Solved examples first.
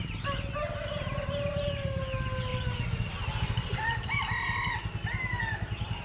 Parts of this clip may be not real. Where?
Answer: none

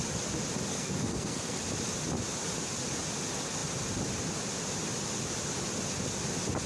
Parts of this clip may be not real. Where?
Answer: 0.7-1.6 (codec, SNAC)

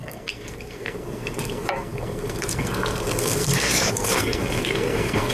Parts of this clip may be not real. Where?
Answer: 0.0-5.3 (codec, SNAC)

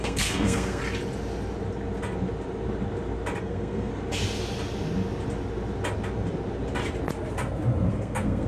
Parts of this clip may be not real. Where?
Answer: 0.0-0.8 (codec, SNAC); 3.4-3.9; 7.9-8.5

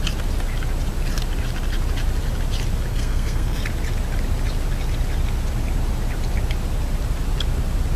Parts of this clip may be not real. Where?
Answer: 2.9-3.6 (codec, SNAC)

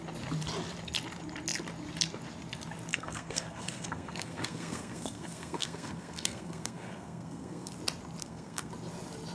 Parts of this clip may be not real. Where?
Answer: 2.9-7.7 (codec, SNAC); 8.2-8.7

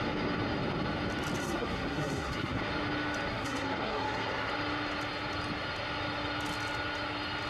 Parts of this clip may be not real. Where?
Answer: 1.4-2.6 (codec, SNAC); 3.3-4.5